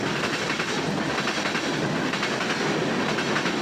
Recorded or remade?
recorded